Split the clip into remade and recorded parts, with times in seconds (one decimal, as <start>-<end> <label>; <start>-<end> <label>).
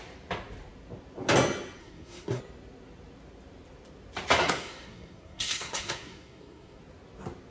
0.0-1.8 recorded; 1.8-2.4 remade; 2.4-4.4 recorded; 4.4-6.8 remade; 6.8-7.5 recorded